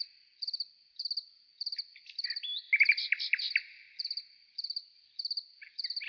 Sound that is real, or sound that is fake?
real